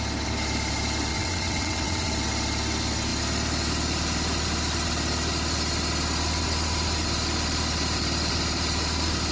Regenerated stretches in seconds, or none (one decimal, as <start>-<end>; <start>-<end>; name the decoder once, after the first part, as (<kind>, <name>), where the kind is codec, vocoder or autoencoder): 1.1-2.1 (vocoder, WaveNeXt)